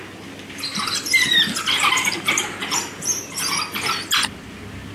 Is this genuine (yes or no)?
yes